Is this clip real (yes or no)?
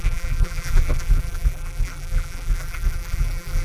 no